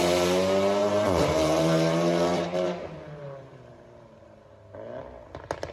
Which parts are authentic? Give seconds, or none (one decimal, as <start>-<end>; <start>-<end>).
0.0-0.8; 4.2-5.7